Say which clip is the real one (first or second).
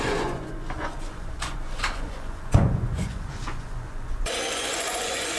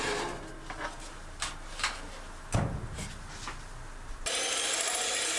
second